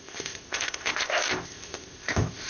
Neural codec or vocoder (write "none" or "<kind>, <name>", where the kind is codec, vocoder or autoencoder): codec, ZipCodec